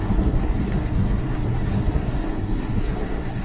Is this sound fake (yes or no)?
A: yes